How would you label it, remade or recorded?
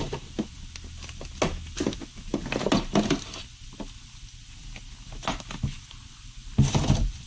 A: recorded